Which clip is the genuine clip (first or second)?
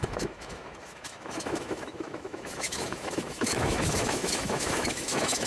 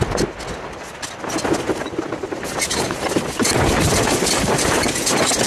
second